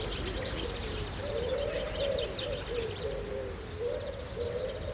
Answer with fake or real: real